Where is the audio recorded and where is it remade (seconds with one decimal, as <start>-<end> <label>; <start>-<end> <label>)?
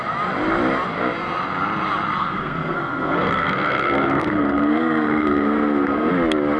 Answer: 0.0-2.2 recorded; 2.2-6.1 remade; 6.1-6.6 recorded